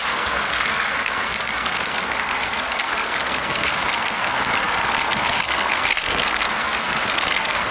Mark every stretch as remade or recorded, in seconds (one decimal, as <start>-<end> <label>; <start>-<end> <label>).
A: 0.0-7.7 remade